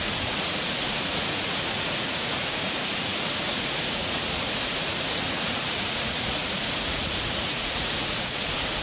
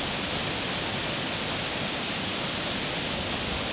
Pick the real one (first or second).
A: second